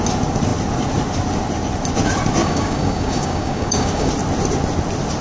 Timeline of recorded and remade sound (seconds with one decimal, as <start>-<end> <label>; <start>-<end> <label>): 0.0-2.4 recorded; 2.4-4.1 remade; 4.1-5.2 recorded